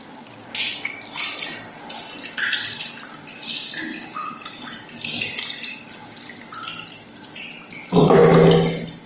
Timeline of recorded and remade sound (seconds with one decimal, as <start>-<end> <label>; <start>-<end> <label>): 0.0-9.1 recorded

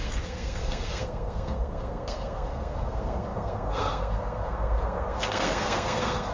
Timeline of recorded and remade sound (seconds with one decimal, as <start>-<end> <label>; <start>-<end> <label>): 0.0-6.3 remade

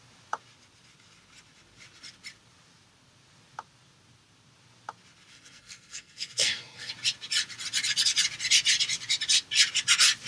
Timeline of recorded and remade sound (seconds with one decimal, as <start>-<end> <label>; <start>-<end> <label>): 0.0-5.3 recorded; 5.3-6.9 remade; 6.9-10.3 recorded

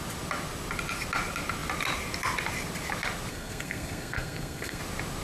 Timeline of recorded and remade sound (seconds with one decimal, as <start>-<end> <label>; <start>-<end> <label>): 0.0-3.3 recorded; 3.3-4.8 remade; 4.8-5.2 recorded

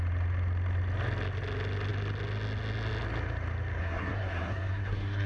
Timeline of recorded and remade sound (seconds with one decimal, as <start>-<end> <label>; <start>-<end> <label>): 0.0-3.8 recorded; 3.8-5.3 remade